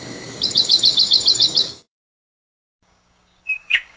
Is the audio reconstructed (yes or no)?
yes